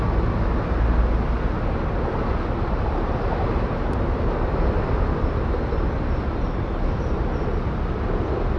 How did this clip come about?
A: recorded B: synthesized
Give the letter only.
A